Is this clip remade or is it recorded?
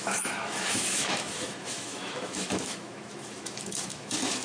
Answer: remade